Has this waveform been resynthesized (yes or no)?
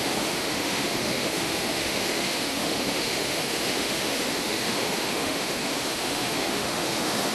yes